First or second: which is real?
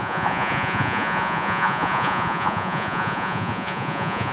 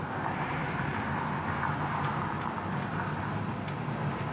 second